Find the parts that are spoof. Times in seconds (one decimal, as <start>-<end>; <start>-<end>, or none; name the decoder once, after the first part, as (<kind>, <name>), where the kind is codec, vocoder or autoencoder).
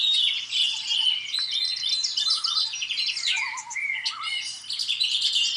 none